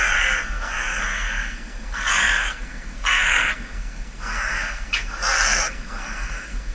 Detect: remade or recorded remade